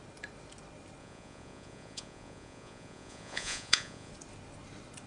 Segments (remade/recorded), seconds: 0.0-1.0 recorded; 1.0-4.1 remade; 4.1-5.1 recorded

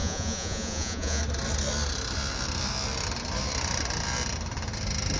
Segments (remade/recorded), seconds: 0.0-1.2 remade; 1.2-5.2 recorded

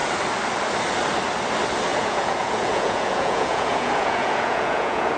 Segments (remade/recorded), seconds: 0.0-1.9 recorded; 1.9-5.2 remade

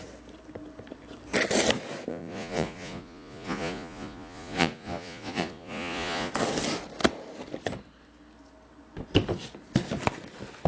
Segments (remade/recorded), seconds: 0.0-2.1 recorded; 2.1-6.3 remade; 6.3-10.7 recorded

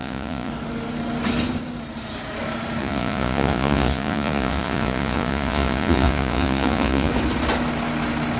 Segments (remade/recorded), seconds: 0.0-0.5 remade; 0.5-2.8 recorded; 2.8-7.1 remade; 7.1-8.4 recorded